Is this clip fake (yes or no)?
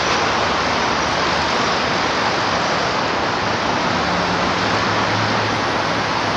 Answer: no